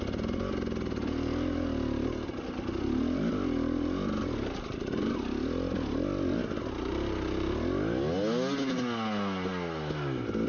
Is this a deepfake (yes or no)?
no